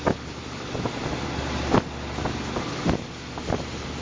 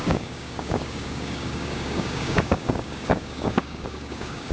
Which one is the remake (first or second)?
second